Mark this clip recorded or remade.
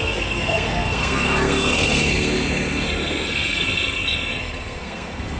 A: remade